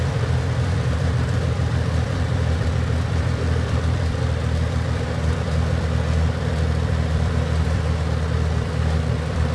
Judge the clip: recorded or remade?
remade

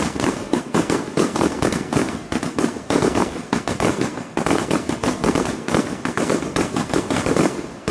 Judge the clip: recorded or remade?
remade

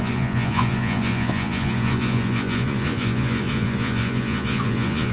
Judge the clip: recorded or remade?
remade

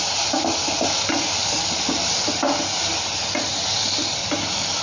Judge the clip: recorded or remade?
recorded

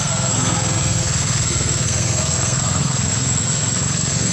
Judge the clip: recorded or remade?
remade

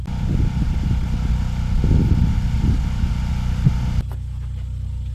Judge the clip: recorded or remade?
recorded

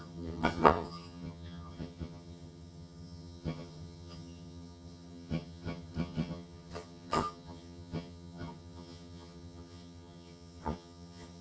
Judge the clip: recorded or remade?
remade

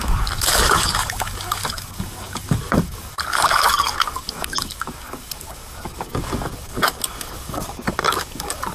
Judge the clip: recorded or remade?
remade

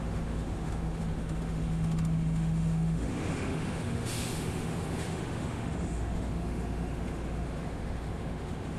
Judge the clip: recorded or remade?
remade